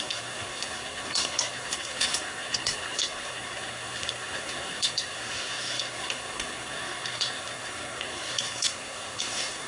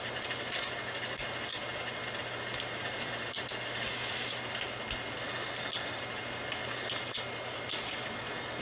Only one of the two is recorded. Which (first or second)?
second